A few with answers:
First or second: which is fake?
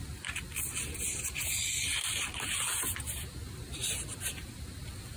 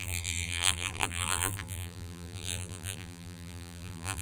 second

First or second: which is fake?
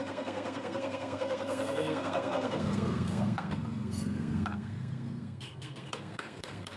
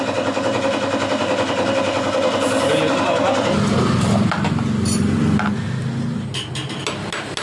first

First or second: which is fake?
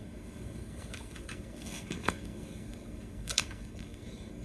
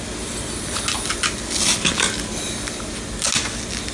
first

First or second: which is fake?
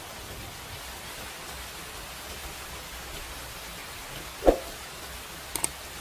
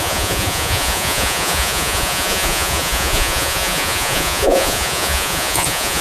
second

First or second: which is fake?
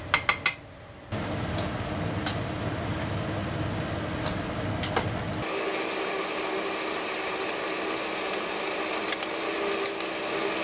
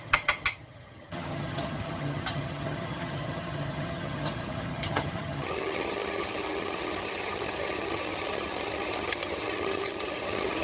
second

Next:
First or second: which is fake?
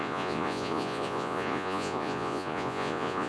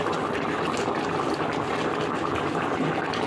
first